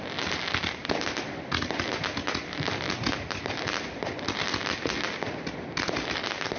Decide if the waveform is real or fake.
real